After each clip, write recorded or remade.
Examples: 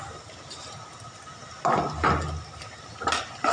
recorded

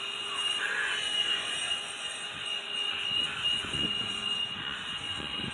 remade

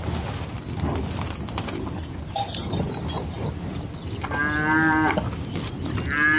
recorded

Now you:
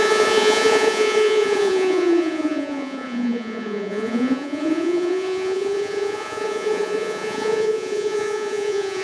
remade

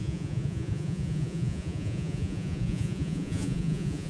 remade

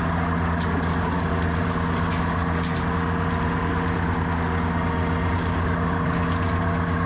recorded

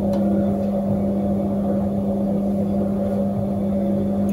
recorded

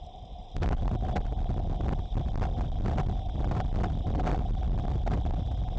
recorded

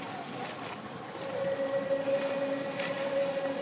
recorded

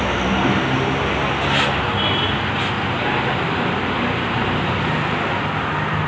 recorded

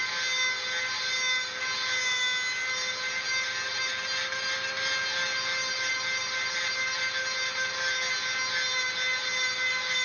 recorded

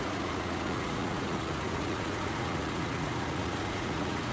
remade